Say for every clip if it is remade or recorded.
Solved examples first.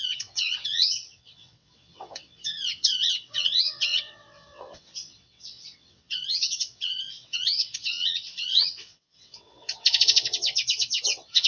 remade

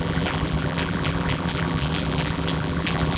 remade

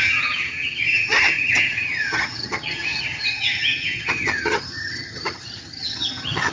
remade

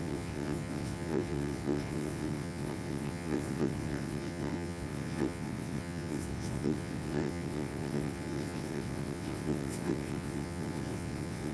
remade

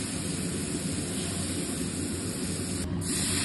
recorded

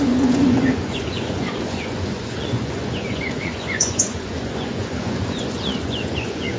remade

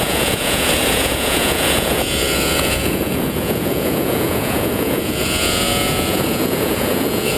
remade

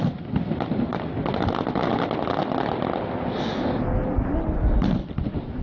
recorded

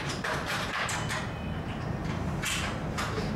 remade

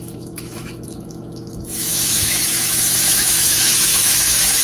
remade